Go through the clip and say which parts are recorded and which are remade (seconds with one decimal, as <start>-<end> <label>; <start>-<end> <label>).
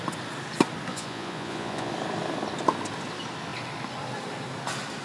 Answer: 0.0-0.9 recorded; 0.9-1.9 remade; 1.9-5.0 recorded